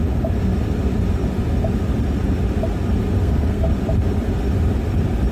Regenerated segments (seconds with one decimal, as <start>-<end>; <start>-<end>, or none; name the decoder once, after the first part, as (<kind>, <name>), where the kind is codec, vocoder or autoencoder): 3.2-3.7 (codec, SNAC)